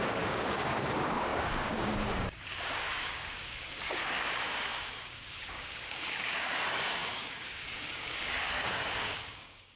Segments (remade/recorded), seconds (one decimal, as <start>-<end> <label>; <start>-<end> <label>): 0.0-9.8 remade